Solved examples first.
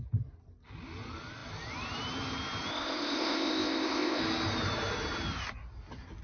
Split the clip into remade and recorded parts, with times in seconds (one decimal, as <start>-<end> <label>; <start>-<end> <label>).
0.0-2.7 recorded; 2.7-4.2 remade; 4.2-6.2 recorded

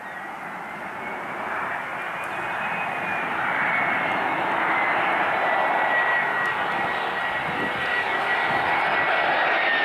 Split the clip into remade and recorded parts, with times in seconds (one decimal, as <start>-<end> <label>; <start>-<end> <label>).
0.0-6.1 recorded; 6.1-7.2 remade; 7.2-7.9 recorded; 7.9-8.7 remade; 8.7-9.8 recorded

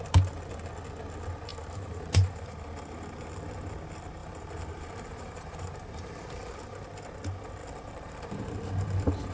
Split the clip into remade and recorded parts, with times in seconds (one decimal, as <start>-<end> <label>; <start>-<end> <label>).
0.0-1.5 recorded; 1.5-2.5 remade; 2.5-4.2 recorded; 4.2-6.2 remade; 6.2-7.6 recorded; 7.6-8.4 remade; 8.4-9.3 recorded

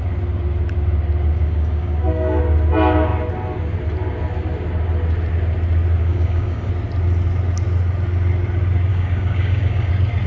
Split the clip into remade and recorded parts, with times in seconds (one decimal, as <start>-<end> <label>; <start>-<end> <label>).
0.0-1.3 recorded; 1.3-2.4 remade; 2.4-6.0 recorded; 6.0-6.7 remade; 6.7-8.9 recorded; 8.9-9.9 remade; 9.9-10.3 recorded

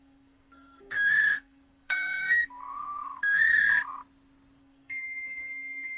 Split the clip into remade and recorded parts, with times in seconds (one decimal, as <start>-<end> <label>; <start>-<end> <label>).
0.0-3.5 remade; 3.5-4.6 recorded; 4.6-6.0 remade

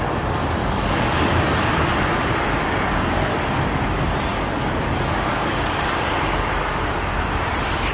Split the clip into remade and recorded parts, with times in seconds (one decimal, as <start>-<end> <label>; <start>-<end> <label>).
0.0-0.6 recorded; 0.6-1.7 remade; 1.7-2.6 recorded; 2.6-3.9 remade; 3.9-4.3 recorded; 4.3-6.9 remade; 6.9-7.9 recorded